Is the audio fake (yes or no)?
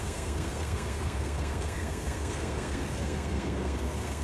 yes